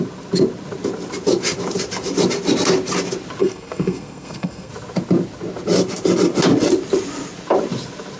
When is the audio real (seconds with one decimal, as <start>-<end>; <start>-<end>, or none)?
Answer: 0.0-3.4; 4.7-8.2